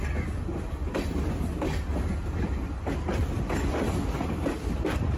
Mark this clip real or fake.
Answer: real